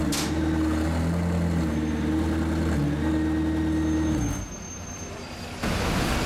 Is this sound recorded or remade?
recorded